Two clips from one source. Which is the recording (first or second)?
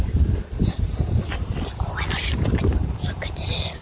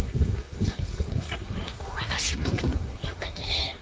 first